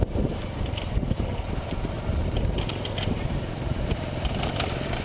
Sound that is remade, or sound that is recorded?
remade